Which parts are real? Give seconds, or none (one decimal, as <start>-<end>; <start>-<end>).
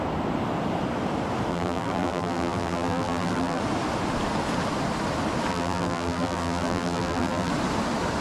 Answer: 0.0-1.5; 3.6-5.5; 7.5-8.2